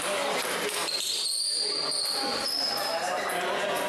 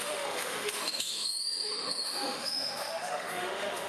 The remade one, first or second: second